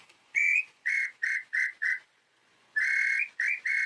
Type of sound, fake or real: fake